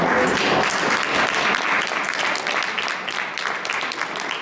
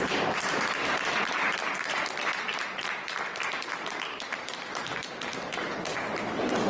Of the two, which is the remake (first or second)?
second